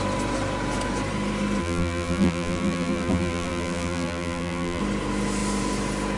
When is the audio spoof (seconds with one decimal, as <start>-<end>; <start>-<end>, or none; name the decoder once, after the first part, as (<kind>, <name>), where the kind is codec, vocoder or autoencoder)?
1.6-4.8 (vocoder, BigVGAN v2)